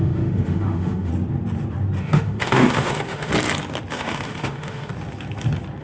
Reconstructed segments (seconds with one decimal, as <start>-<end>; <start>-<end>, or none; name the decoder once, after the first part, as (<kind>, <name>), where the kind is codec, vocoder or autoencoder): 0.0-1.1 (autoencoder, DAC-VAE); 2.0-3.3; 3.9-4.9